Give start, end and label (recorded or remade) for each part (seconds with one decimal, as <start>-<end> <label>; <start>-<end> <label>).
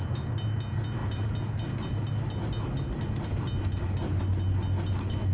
0.0-5.3 recorded